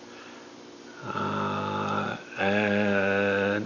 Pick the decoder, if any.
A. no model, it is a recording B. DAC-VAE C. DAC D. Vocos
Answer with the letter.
A